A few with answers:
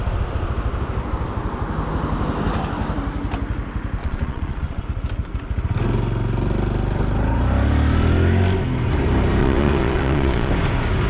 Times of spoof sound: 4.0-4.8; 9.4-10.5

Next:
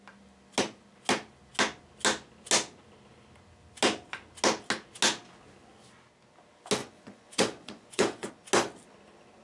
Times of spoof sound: 6.8-8.3

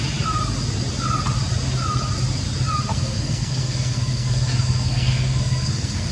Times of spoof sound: 2.9-6.1

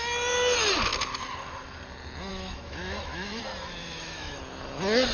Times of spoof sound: 2.3-3.4; 3.8-4.4